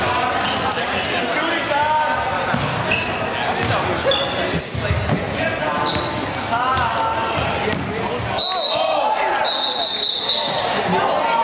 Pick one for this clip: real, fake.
real